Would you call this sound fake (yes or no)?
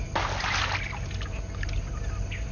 no